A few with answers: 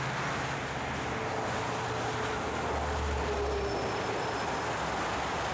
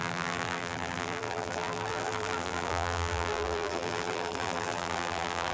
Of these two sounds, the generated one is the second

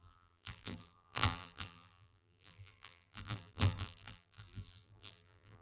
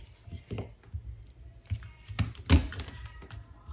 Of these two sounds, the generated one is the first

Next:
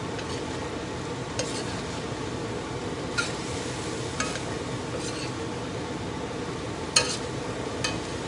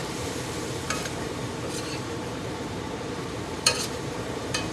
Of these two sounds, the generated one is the second